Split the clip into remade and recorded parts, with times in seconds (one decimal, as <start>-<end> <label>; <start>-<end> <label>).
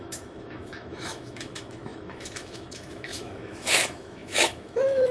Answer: 0.0-5.1 remade